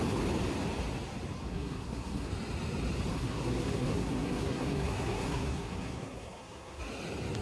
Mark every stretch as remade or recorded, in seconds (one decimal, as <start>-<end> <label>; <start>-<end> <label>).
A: 0.0-1.5 recorded; 1.5-2.3 remade; 2.3-3.1 recorded; 3.1-6.8 remade; 6.8-7.4 recorded